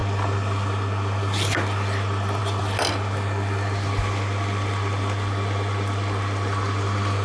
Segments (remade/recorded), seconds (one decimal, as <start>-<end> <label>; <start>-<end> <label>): 0.0-7.2 recorded